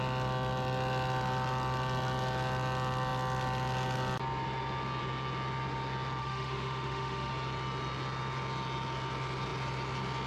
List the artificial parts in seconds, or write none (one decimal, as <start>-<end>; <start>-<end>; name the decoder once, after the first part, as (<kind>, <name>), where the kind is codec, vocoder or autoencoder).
6.2-7.3 (autoencoder, DAC-VAE)